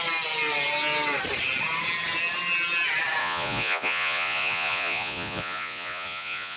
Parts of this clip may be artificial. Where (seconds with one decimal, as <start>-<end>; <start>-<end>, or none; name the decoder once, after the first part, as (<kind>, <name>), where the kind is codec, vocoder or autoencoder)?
3.2-6.6 (vocoder, Vocos)